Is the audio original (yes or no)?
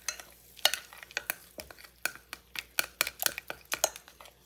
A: yes